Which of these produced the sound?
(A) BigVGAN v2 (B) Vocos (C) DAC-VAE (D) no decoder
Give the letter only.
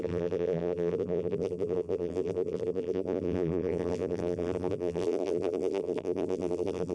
A